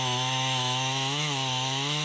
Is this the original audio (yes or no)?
no